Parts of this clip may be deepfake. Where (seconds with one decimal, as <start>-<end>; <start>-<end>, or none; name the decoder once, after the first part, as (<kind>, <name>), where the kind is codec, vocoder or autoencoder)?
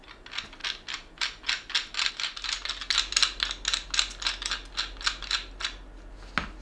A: none